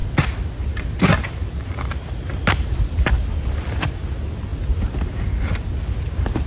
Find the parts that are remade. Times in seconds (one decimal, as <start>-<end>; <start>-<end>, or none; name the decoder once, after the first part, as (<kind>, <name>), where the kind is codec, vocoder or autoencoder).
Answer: none